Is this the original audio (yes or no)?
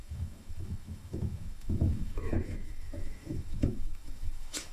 no